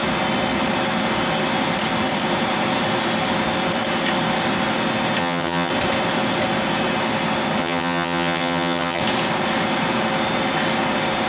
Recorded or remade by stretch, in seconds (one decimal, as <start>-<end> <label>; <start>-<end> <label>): 0.0-5.2 recorded; 5.2-5.7 remade; 5.7-7.6 recorded; 7.6-9.0 remade; 9.0-11.3 recorded